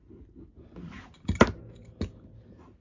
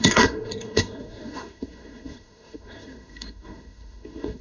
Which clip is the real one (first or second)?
first